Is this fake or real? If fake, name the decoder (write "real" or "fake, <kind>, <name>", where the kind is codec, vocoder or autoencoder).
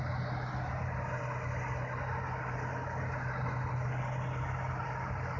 real